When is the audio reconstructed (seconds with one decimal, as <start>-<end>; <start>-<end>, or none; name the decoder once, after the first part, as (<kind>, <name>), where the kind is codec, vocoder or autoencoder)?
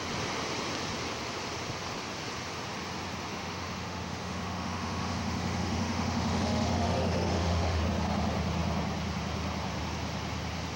3.3-7.8 (autoencoder, DAC-VAE)